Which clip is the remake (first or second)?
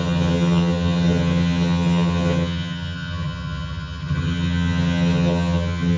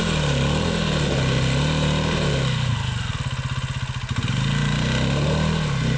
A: first